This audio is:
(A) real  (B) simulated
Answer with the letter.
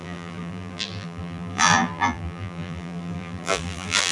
B